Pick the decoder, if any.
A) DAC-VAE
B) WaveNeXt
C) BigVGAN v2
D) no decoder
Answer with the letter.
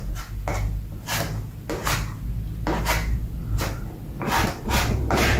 D